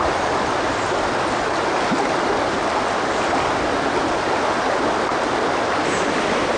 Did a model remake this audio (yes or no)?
no